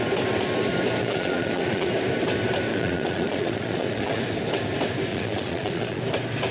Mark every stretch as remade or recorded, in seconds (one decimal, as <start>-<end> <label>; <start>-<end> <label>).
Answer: 0.0-1.0 recorded; 1.0-1.9 remade; 1.9-2.7 recorded; 2.7-4.2 remade; 4.2-5.1 recorded; 5.1-6.0 remade; 6.0-6.5 recorded